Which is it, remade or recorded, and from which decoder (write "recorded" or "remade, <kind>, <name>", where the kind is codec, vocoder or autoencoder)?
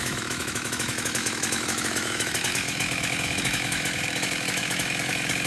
remade, autoencoder, DAC-VAE